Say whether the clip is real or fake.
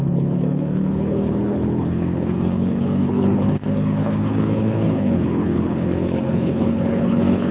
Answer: fake